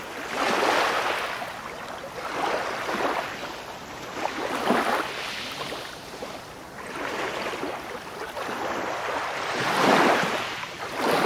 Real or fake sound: real